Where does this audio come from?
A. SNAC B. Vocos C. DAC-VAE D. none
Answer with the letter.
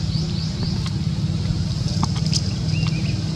D